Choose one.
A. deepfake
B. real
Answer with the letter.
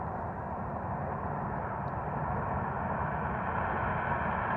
B